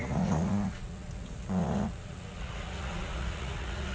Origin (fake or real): fake